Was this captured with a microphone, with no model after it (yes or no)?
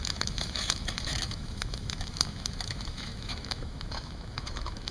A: no